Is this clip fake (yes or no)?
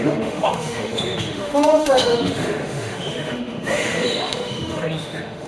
yes